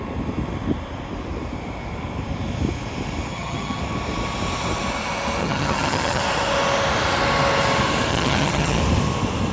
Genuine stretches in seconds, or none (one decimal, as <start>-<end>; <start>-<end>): 0.0-3.3; 3.8-5.4; 6.2-8.1; 8.8-9.5

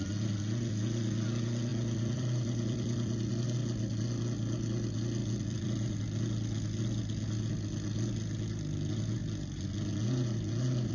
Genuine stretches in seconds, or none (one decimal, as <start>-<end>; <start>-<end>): 0.0-1.7; 3.3-5.2; 6.0-10.9

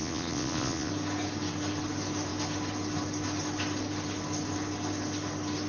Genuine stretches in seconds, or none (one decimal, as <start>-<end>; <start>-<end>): 0.9-5.7

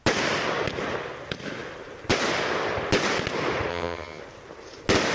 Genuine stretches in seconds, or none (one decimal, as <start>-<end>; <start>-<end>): 0.0-3.7; 4.2-5.1

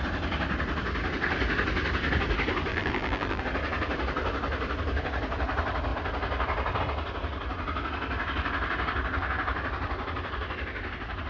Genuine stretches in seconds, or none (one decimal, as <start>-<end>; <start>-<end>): 0.0-2.7; 3.4-11.3

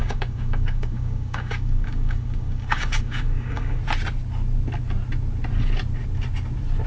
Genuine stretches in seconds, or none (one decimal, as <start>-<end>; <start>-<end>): 3.8-6.9